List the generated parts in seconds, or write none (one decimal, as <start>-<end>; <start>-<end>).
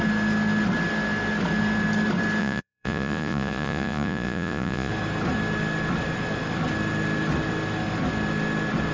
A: 2.4-4.9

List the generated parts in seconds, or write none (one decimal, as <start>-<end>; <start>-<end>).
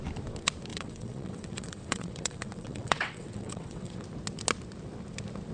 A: 0.7-4.0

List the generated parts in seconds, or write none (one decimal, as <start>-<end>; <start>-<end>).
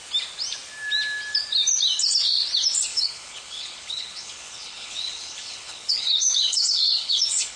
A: 2.9-7.6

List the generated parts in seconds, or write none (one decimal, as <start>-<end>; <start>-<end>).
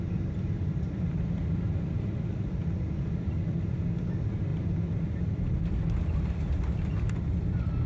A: none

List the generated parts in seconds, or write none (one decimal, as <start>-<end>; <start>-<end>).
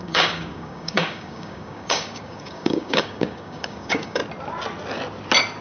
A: 0.0-4.2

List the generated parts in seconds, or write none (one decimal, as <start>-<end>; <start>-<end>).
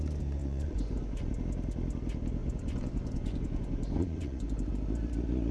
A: 0.4-1.3; 2.4-4.7